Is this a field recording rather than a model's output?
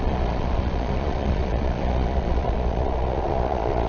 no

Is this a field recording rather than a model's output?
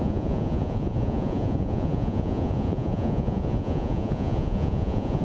no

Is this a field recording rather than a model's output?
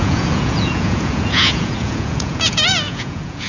no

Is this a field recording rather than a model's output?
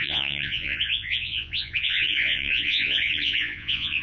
no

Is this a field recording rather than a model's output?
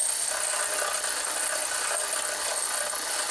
yes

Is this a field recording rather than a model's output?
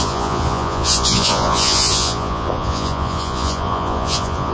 no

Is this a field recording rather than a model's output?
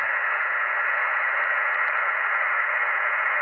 no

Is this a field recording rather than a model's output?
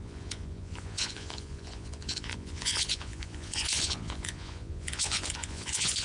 no